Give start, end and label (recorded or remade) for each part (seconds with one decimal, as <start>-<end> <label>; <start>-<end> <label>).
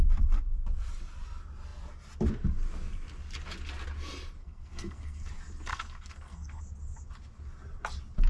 0.0-4.4 recorded; 4.4-5.3 remade; 5.3-5.7 recorded; 5.7-6.6 remade; 6.6-8.3 recorded